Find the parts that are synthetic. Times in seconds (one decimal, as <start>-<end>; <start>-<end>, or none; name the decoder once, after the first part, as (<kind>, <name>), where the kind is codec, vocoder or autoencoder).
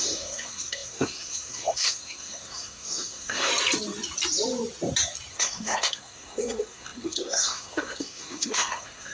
0.0-3.5 (codec, SNAC); 5.3-9.1